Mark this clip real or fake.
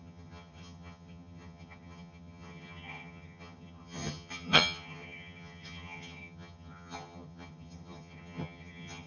fake